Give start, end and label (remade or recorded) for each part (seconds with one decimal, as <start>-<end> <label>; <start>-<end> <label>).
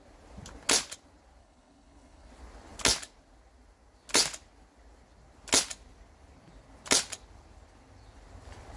0.0-1.4 recorded; 1.4-2.3 remade; 2.3-8.8 recorded